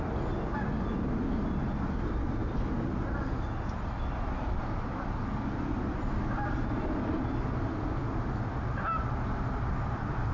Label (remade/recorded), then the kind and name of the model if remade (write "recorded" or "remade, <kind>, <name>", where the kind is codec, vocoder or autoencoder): recorded